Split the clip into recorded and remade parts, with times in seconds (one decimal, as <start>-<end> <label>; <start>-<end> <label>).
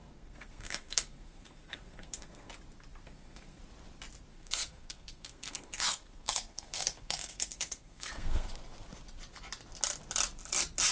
0.0-2.5 remade; 2.5-3.0 recorded; 3.0-3.6 remade; 3.6-4.3 recorded; 4.3-8.5 remade; 8.5-10.9 recorded